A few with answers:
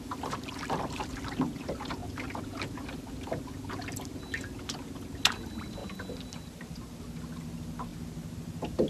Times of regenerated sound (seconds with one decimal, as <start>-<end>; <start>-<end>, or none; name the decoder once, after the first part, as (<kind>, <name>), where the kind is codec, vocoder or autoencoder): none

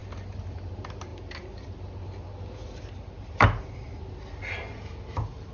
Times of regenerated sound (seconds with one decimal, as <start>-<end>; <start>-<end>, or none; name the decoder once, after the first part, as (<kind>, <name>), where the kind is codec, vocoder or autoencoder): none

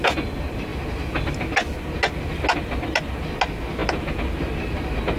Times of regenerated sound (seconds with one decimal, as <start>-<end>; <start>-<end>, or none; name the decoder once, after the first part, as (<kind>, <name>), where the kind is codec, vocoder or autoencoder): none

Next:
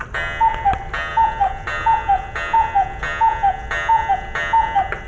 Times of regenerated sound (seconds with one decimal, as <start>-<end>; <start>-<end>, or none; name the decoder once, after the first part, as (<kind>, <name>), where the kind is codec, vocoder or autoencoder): none